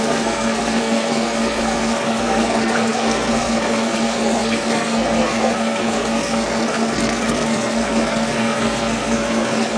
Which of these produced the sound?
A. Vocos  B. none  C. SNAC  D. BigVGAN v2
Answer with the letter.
C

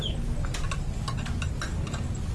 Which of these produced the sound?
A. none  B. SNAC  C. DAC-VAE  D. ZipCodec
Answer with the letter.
A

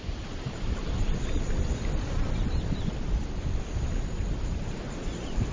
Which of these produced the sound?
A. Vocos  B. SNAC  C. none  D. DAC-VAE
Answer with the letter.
C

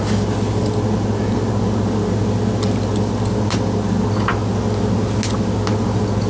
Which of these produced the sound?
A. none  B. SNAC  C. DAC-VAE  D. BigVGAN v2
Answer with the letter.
A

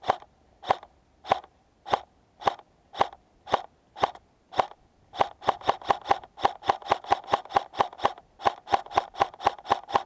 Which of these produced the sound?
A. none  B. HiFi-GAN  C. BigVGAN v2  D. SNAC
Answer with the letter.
A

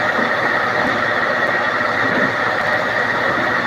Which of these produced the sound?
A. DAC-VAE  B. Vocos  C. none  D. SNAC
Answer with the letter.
C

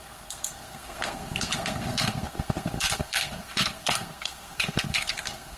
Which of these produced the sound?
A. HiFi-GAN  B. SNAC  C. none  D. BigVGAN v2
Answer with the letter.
B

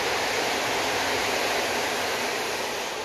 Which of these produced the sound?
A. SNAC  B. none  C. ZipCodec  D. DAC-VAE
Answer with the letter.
B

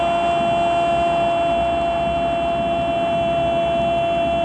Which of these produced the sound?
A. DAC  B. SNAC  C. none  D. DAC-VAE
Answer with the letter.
C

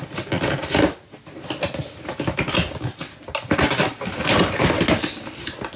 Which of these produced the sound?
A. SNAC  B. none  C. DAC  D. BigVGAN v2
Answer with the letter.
B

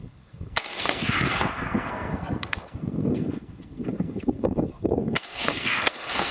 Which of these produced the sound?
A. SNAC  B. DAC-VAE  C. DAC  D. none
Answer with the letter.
A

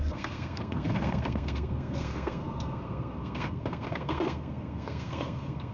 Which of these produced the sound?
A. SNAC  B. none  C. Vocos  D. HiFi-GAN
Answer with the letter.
A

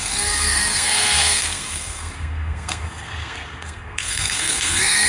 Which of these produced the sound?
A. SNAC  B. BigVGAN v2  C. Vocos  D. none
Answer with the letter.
A